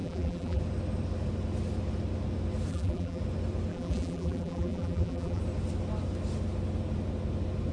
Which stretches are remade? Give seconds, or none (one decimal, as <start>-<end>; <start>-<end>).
0.0-0.6; 2.7-3.2; 3.7-5.4